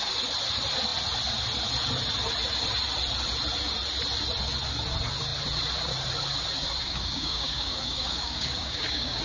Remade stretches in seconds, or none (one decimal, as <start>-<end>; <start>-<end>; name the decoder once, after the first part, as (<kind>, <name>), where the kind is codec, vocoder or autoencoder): 6.8-9.2 (codec, DAC)